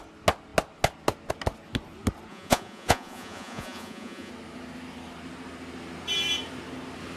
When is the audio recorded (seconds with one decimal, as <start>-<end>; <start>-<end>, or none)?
0.0-2.3; 4.3-7.2